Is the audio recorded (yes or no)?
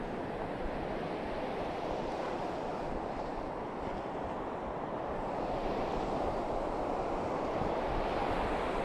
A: no